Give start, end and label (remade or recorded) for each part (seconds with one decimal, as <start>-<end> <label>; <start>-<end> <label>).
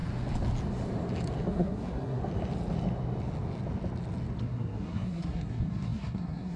0.0-1.5 recorded; 1.5-2.2 remade; 2.2-4.4 recorded; 4.4-6.6 remade